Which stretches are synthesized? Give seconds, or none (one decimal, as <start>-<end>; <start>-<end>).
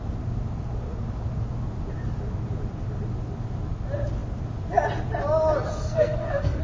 5.8-6.6